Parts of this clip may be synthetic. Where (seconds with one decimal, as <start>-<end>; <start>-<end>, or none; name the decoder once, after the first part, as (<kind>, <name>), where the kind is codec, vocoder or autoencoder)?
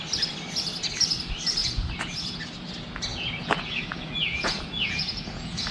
1.6-2.4 (vocoder, Vocos); 3.1-5.7